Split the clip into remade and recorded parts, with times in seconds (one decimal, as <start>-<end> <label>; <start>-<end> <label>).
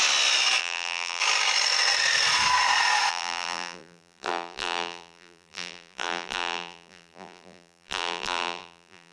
0.0-0.6 recorded; 0.6-1.2 remade; 1.2-3.1 recorded; 3.1-9.1 remade